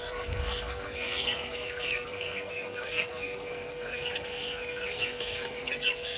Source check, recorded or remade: remade